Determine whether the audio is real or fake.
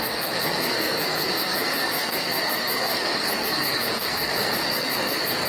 fake